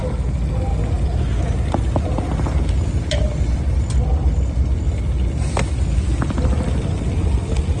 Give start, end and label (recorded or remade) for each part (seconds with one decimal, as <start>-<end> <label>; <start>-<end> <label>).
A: 0.0-7.8 recorded